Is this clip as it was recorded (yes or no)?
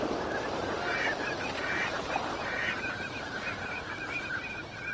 yes